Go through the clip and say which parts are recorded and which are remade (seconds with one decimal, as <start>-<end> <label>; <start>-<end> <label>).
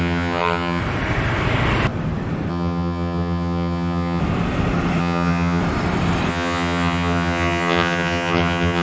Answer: 0.0-0.8 remade; 0.8-2.5 recorded; 2.5-4.2 remade; 4.2-5.0 recorded; 5.0-5.6 remade; 5.6-6.3 recorded; 6.3-8.8 remade